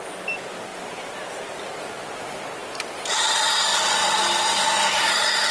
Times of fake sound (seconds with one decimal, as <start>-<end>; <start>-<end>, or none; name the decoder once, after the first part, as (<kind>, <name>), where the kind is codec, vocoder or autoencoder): none